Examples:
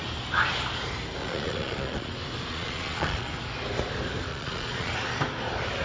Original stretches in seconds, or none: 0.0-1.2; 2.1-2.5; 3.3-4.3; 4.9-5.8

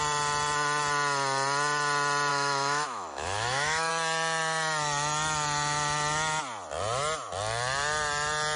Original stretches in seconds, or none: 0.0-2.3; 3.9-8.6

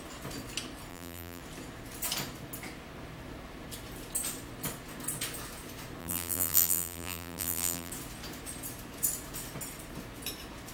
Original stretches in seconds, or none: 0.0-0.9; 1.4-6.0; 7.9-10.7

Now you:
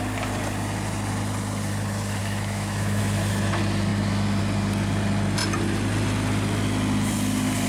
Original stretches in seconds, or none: 0.0-2.2; 3.0-7.7